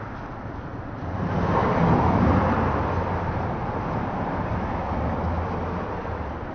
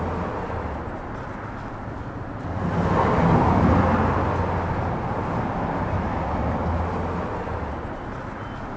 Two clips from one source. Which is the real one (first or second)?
second